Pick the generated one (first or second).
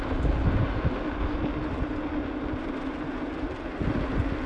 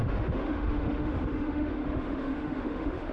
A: second